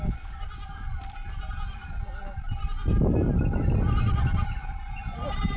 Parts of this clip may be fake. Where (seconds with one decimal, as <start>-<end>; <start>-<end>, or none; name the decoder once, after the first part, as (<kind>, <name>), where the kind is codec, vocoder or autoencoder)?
none